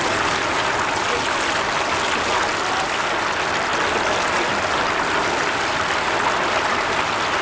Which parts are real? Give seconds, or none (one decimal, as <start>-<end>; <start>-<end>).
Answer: 0.0-7.4